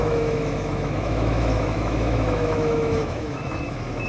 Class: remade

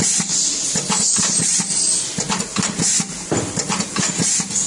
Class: recorded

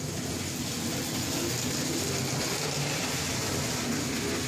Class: recorded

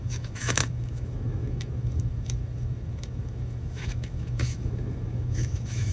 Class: remade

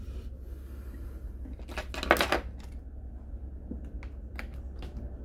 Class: recorded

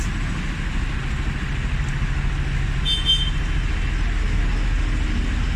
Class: recorded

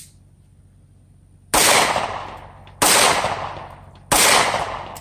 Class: recorded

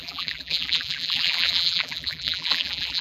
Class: remade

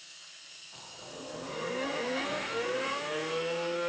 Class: remade